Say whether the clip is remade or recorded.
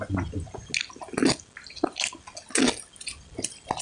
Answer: recorded